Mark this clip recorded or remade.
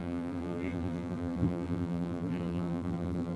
remade